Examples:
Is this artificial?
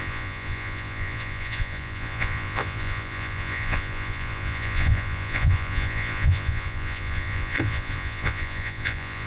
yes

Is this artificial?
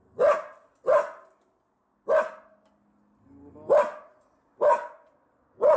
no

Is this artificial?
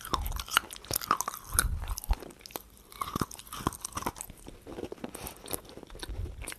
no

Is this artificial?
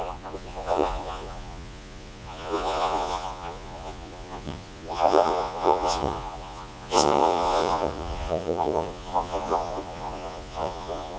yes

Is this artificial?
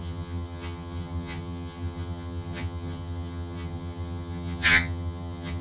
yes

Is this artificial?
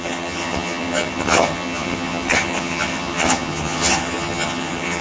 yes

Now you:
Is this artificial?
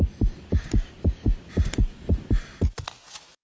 no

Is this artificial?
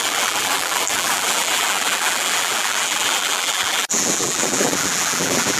yes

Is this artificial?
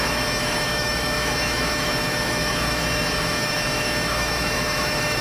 yes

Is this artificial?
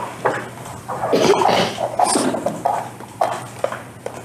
no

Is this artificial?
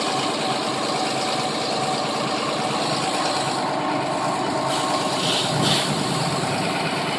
no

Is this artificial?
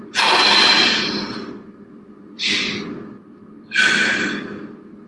no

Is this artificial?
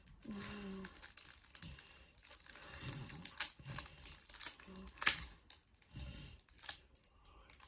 no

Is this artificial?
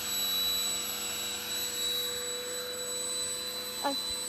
no